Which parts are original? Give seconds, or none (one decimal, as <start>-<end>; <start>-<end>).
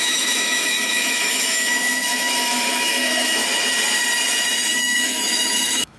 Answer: 3.4-4.8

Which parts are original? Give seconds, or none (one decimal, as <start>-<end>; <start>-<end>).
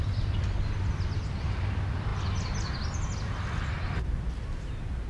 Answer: 0.0-5.1